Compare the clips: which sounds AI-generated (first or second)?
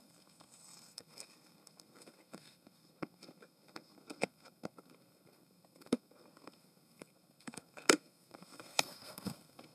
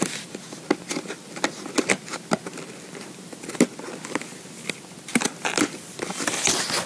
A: first